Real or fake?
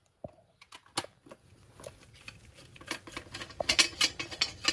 real